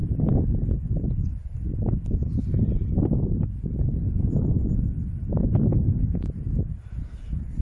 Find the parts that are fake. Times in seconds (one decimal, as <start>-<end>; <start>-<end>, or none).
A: 0.0-4.6; 6.1-7.6